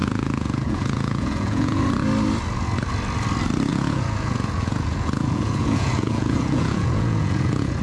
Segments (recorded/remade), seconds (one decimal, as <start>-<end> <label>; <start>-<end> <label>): 0.0-1.8 remade; 1.8-3.7 recorded; 3.7-7.8 remade